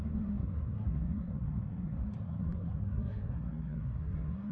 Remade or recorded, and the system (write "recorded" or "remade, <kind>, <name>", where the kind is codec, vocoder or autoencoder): remade, codec, SNAC